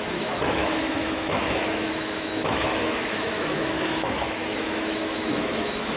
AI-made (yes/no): yes